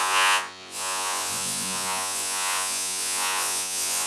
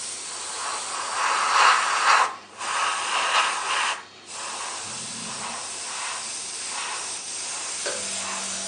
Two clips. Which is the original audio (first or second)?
second